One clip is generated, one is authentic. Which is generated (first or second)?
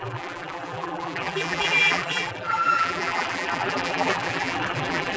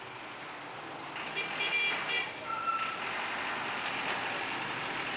first